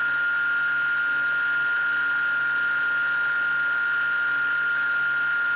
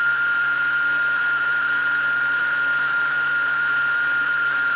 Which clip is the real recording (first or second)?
first